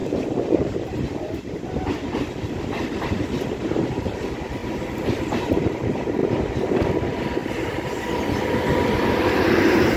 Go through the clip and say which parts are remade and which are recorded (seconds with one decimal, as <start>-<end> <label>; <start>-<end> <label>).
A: 0.0-1.9 remade; 1.9-6.2 recorded; 6.2-6.9 remade; 6.9-7.4 recorded; 7.4-8.1 remade; 8.1-10.0 recorded